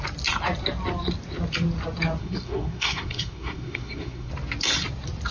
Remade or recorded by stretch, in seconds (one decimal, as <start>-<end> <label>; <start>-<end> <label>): 0.0-2.2 recorded; 2.2-4.3 remade; 4.3-5.3 recorded